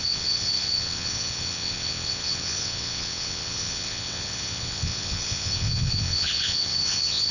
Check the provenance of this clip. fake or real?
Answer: fake